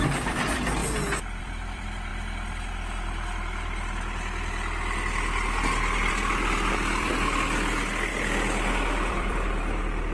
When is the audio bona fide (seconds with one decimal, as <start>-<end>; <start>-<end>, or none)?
0.8-1.4; 2.1-6.1; 8.1-9.1